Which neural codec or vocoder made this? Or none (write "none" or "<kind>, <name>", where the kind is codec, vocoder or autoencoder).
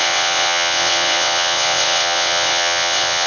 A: vocoder, WaveNeXt